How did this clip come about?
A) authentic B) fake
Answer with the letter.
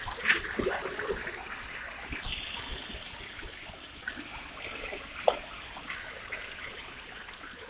A